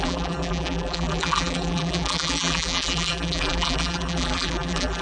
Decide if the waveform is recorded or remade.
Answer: remade